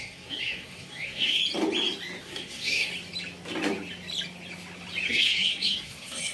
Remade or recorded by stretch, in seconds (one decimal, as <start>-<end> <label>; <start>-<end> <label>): 0.0-1.4 remade; 1.4-2.2 recorded; 2.2-2.9 remade; 2.9-5.1 recorded; 5.1-6.3 remade

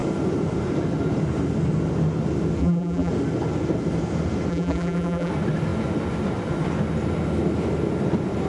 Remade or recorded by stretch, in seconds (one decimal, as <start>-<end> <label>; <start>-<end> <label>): 0.0-2.6 recorded; 2.6-3.1 remade; 3.1-4.5 recorded; 4.5-5.3 remade; 5.3-8.5 recorded

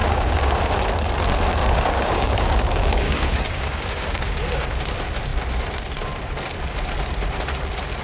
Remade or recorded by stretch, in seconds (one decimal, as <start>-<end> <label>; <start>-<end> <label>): 0.0-0.6 remade; 0.6-1.6 recorded; 1.6-4.8 remade; 4.8-8.0 recorded

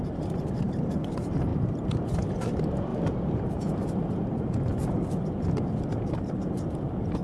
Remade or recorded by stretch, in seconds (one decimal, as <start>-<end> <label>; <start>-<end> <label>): 0.0-4.7 remade; 4.7-6.4 recorded; 6.4-7.2 remade